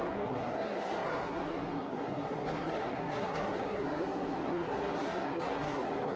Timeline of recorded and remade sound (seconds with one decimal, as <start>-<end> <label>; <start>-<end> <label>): 0.0-6.2 remade

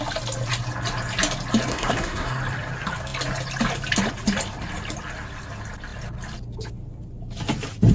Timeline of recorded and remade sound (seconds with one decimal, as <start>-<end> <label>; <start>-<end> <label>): 0.0-1.7 recorded; 1.7-2.4 remade; 2.4-7.9 recorded

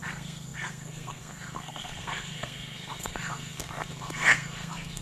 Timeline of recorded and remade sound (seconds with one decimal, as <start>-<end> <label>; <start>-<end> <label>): 0.0-5.0 remade

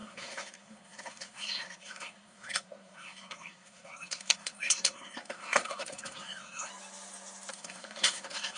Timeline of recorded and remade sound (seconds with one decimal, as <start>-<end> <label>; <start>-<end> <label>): 0.0-6.7 remade; 6.7-7.5 recorded; 7.5-8.6 remade

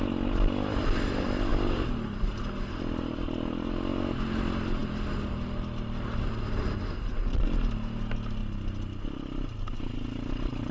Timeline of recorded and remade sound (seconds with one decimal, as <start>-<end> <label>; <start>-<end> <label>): 0.0-10.7 recorded

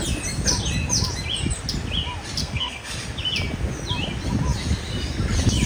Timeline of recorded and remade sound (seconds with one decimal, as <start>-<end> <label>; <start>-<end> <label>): 0.0-2.4 recorded; 2.4-2.9 remade; 2.9-5.7 recorded

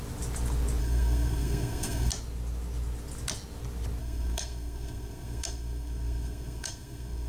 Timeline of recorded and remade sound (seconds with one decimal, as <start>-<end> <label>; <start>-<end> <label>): 0.0-0.8 recorded; 0.8-2.1 remade; 2.1-4.0 recorded; 4.0-7.3 remade